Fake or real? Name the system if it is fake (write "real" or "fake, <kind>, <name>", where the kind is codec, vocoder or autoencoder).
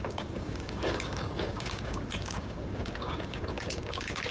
fake, codec, DAC